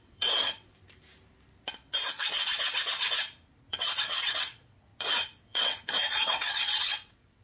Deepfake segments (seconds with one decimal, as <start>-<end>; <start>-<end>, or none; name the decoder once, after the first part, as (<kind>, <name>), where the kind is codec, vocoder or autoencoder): 0.0-0.7 (vocoder, WaveNeXt); 3.7-4.9; 5.4-7.4